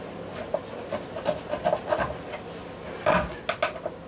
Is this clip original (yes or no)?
yes